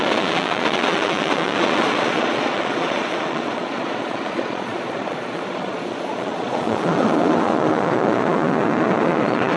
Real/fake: fake